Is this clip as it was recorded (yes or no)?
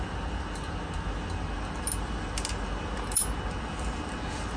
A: yes